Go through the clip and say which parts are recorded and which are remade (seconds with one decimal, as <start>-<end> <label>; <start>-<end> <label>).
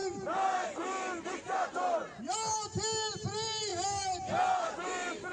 0.0-3.7 recorded; 3.7-4.2 remade; 4.2-5.3 recorded